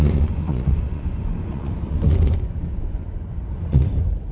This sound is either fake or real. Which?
fake